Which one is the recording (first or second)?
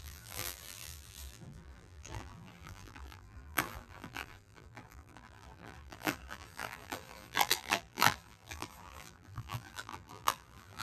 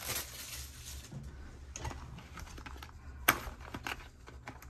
second